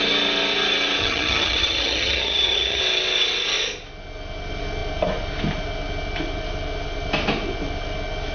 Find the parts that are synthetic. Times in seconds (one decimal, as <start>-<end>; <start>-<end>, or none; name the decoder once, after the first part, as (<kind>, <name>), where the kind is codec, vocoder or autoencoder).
1.0-2.8 (vocoder, HiFi-GAN)